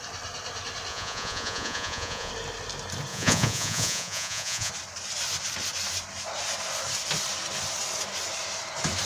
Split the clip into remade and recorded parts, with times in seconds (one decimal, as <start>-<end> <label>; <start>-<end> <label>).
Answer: 0.0-0.9 recorded; 0.9-2.3 remade; 2.3-3.1 recorded; 3.1-4.7 remade; 4.7-9.1 recorded